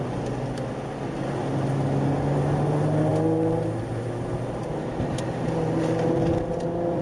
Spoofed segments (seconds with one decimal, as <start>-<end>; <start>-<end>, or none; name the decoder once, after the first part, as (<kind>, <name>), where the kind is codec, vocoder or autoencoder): none